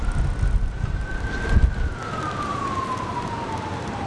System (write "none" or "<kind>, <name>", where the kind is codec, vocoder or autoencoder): none